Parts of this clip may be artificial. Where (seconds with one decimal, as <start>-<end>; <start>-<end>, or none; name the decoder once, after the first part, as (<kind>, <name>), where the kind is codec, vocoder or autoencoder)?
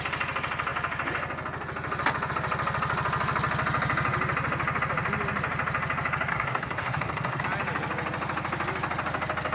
6.3-7.4 (codec, SNAC)